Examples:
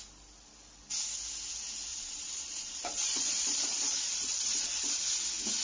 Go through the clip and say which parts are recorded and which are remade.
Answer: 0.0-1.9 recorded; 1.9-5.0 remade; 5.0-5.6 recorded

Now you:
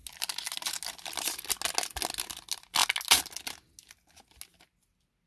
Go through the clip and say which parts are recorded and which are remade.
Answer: 0.0-5.3 recorded

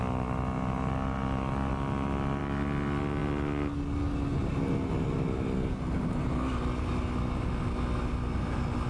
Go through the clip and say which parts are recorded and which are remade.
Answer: 0.0-8.9 recorded

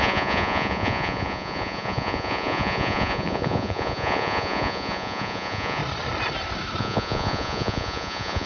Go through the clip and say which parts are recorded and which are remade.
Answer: 0.0-5.8 remade; 5.8-6.8 recorded; 6.8-8.5 remade